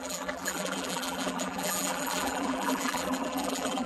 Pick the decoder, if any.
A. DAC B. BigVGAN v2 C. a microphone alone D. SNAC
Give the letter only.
B